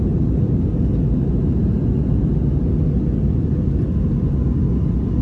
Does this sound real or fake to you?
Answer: real